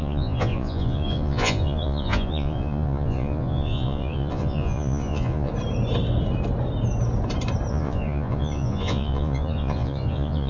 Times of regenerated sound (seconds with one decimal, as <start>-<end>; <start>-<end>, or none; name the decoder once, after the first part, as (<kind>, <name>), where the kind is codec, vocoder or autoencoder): 0.0-5.5 (vocoder, Vocos); 7.7-10.5